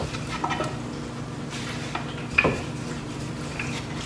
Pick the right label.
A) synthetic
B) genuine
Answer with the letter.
B